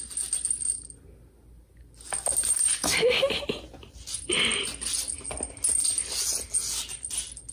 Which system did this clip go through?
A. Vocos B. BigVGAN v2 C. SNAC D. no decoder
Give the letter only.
D